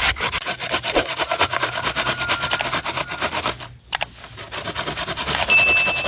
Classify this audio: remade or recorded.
recorded